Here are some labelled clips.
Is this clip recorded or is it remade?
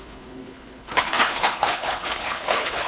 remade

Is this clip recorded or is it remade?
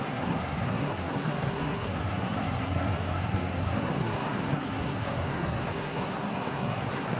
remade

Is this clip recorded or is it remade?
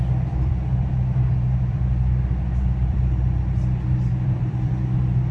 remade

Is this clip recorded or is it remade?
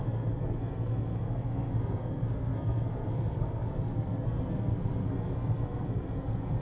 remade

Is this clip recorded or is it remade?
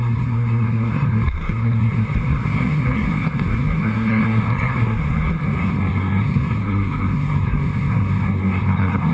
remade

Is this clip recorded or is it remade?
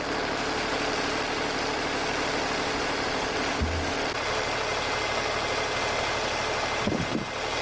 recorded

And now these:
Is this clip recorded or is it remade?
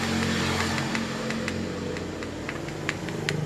recorded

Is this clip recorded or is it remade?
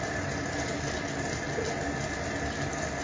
recorded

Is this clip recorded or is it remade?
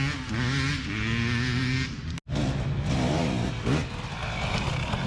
recorded